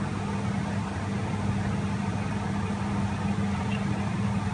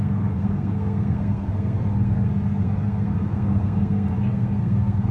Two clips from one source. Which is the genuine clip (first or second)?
first